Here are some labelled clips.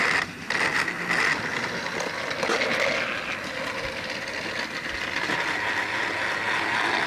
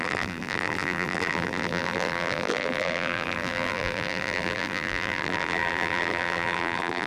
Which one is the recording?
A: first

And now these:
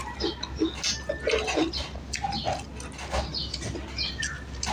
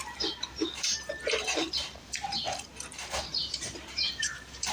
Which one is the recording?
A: first